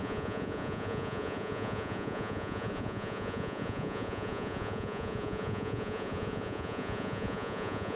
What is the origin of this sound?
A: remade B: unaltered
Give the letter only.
A